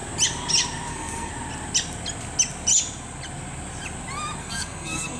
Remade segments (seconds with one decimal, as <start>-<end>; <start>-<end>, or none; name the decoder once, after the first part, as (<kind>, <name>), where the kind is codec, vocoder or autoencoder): 0.9-1.3 (codec, SNAC); 4.4-5.2